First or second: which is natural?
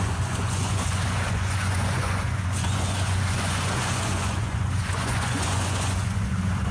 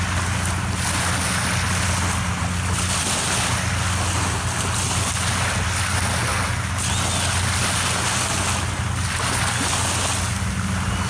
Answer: second